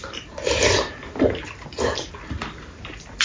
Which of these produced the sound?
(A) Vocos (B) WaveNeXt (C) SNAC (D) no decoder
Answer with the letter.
D